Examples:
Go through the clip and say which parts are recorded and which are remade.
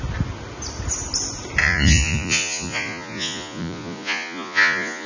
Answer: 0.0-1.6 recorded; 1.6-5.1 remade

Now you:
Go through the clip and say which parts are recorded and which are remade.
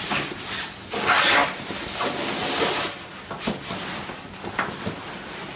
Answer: 0.0-5.6 recorded